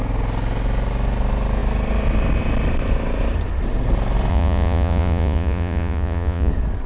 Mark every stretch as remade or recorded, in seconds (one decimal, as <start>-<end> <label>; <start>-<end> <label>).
0.0-4.3 recorded; 4.3-6.5 remade; 6.5-6.9 recorded